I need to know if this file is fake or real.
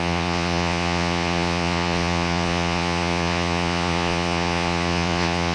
fake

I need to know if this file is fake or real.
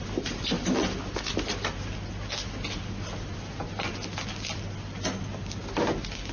real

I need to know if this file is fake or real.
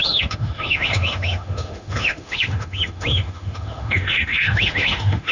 fake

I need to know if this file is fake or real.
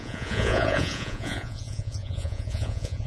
fake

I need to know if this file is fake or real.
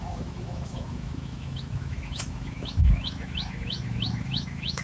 fake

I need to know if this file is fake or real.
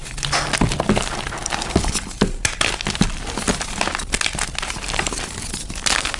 real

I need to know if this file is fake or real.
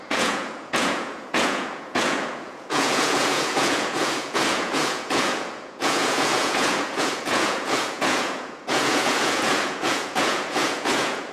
fake